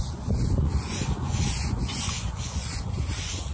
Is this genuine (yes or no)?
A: no